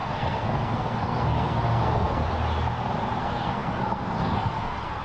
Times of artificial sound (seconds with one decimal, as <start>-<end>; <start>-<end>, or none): 0.0-2.2; 3.2-5.0